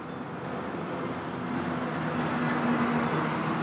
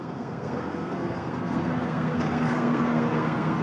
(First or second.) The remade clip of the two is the second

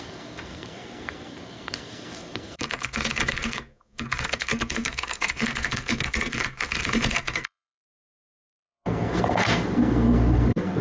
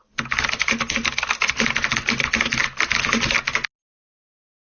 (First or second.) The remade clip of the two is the first